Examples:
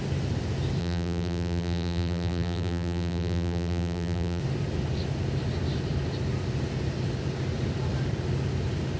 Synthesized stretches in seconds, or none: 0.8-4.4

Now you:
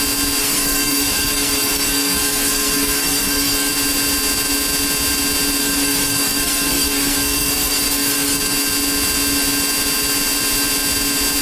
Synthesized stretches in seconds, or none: 0.4-3.7; 5.6-8.4

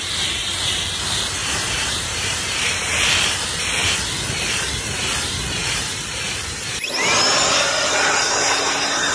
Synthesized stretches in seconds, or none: 1.4-3.3; 5.6-6.9